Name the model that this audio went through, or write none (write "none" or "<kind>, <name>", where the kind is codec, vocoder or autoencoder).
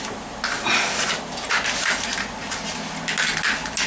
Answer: none